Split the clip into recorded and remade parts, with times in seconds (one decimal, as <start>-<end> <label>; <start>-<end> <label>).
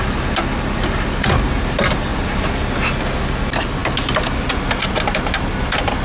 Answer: 0.0-6.0 recorded